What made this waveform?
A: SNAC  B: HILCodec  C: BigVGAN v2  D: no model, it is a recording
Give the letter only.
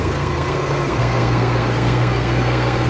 A